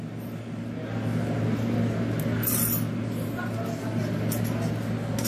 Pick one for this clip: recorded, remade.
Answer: recorded